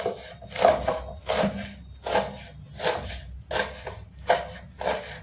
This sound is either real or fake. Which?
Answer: real